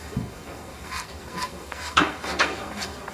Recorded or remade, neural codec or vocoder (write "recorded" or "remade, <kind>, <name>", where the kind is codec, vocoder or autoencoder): remade, codec, SNAC